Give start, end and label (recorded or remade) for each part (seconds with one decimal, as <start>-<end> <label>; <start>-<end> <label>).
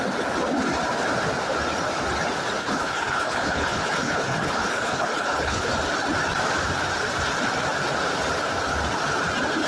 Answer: 0.0-2.6 recorded; 2.6-5.7 remade; 5.7-9.7 recorded